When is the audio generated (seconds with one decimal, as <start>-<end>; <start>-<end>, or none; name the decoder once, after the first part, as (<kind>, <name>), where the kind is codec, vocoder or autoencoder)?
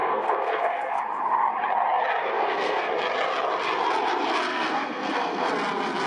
0.0-1.0 (codec, SNAC); 2.2-2.9; 4.5-5.5